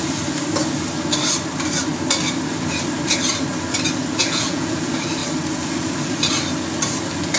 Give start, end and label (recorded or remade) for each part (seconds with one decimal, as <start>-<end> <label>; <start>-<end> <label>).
0.0-4.2 recorded; 4.2-4.8 remade; 4.8-7.4 recorded